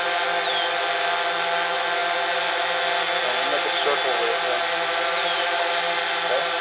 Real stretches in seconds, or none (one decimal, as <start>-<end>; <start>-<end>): 0.0-6.6